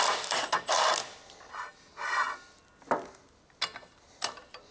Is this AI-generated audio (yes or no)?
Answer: no